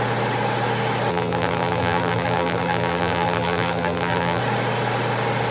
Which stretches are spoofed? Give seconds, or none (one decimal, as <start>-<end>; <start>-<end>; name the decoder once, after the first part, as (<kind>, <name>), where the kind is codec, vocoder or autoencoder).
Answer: 1.1-4.4 (vocoder, BigVGAN v2)